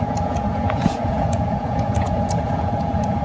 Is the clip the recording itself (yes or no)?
no